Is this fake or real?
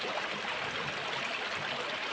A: real